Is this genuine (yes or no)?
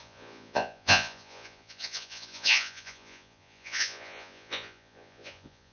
no